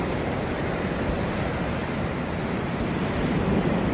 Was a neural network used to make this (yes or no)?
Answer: yes